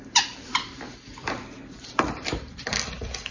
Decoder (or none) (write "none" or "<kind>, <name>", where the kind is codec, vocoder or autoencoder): vocoder, BigVGAN v2